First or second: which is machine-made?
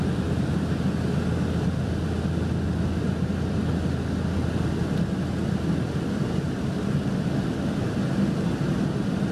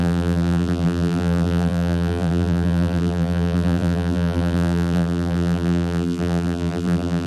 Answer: second